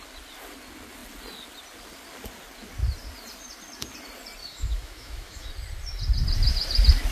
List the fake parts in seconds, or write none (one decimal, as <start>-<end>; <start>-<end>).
4.4-5.5